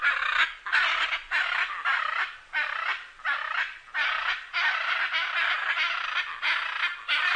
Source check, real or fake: real